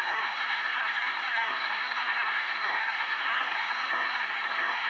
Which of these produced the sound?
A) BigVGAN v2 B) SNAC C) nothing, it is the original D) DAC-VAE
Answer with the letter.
B